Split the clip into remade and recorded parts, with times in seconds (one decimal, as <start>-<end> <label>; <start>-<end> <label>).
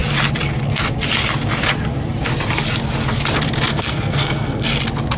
0.0-3.7 recorded; 3.7-4.7 remade; 4.7-5.2 recorded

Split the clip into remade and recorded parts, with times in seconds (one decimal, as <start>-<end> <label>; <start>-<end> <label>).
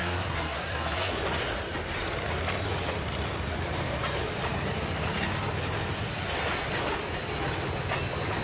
0.0-1.1 remade; 1.1-8.4 recorded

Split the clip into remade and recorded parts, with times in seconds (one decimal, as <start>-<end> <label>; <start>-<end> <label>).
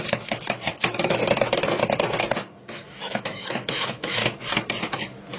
0.0-1.2 remade; 1.2-2.7 recorded; 2.7-4.2 remade; 4.2-4.8 recorded; 4.8-5.4 remade